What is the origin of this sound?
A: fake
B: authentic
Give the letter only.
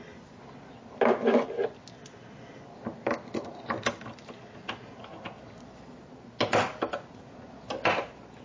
B